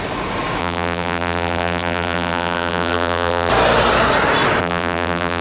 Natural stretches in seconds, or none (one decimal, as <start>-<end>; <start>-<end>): 0.0-0.6; 3.5-4.6